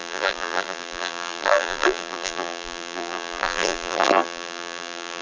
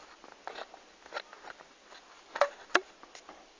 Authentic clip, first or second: second